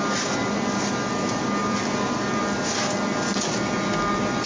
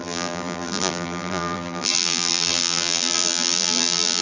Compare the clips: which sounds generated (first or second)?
second